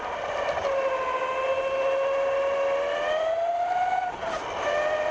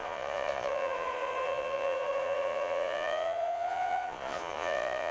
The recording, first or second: first